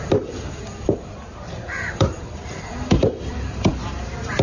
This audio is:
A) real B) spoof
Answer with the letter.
B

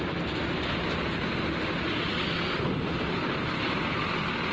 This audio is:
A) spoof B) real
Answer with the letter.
B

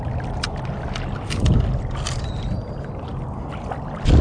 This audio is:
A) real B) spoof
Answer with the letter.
A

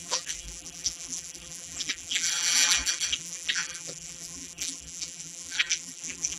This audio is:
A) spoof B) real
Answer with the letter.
A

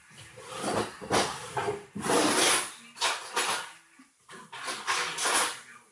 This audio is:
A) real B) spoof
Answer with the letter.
A